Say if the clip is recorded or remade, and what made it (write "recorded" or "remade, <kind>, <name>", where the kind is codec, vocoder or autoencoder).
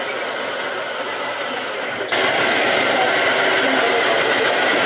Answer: recorded